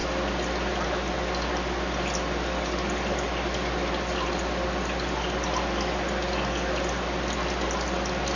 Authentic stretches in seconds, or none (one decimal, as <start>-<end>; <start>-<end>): 0.0-8.3

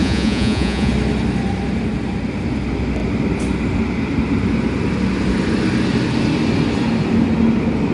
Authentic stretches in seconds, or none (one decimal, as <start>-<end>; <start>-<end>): 0.9-7.9

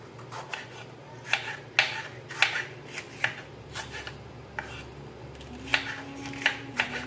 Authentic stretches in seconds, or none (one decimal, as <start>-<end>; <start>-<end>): 0.0-7.1